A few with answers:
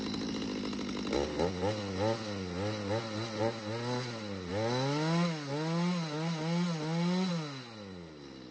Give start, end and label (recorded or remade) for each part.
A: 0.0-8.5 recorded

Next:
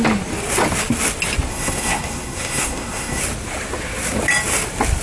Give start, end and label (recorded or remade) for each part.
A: 0.0-1.5 recorded; 1.5-3.2 remade; 3.2-5.0 recorded

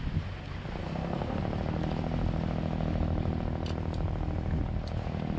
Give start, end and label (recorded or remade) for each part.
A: 0.0-0.8 recorded; 0.8-1.4 remade; 1.4-5.4 recorded

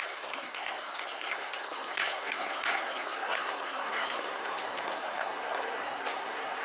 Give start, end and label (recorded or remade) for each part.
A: 0.0-6.6 remade

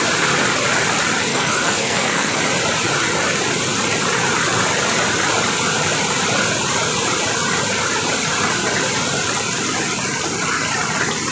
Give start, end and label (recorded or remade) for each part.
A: 0.0-1.3 recorded; 1.3-2.4 remade; 2.4-11.3 recorded

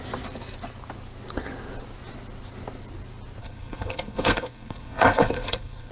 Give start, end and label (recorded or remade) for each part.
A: 0.0-3.4 recorded; 3.4-5.9 remade

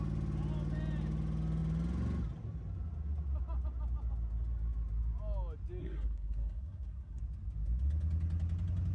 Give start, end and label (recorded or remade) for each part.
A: 0.0-5.8 recorded; 5.8-7.2 remade; 7.2-8.9 recorded